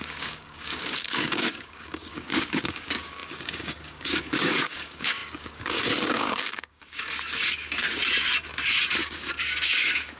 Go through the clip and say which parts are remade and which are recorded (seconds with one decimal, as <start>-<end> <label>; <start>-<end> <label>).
0.0-8.0 remade; 8.0-8.9 recorded; 8.9-10.2 remade